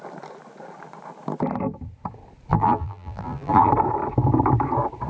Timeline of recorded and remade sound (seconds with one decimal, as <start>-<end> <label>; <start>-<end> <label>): 0.0-2.5 recorded; 2.5-3.7 remade; 3.7-5.1 recorded